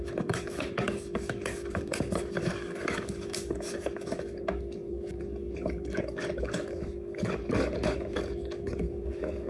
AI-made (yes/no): yes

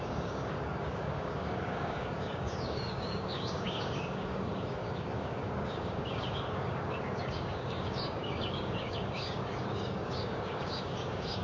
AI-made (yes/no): yes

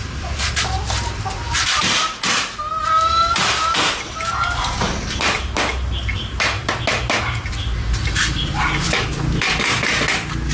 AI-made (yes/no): no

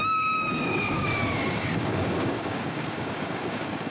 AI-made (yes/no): yes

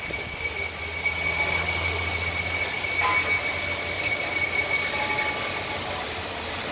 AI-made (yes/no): no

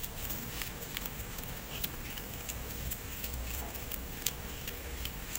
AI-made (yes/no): yes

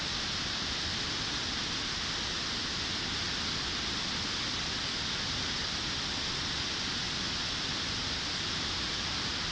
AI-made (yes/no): no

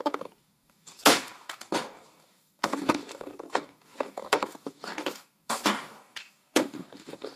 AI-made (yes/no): yes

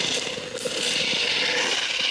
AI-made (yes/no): no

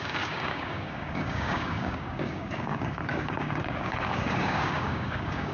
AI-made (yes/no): yes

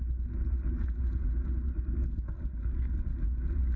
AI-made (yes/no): no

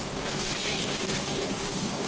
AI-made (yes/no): yes